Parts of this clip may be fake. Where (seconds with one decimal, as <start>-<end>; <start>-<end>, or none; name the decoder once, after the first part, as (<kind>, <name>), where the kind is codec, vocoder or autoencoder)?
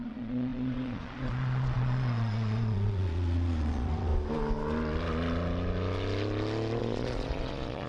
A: 0.0-4.1 (vocoder, Vocos); 6.8-7.9